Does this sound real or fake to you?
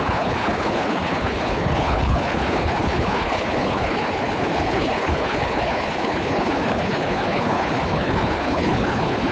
fake